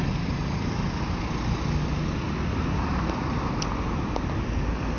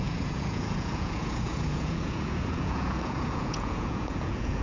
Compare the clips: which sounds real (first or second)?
first